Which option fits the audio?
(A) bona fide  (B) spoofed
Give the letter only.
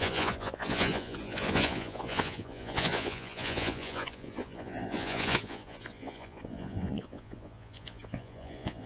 B